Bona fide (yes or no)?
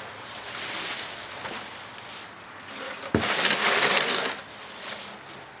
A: yes